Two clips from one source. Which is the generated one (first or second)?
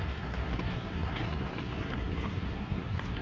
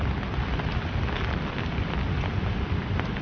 first